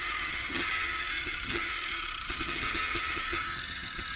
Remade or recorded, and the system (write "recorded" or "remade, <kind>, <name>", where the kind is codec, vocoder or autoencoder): remade, vocoder, HiFi-GAN